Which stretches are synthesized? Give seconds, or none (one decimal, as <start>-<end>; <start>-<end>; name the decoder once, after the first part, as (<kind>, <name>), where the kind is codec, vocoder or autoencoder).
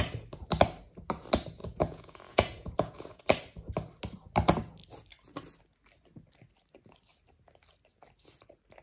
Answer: 1.6-3.2 (vocoder, Vocos)